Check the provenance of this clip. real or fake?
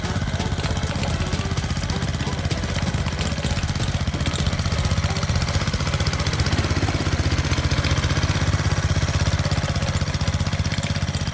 real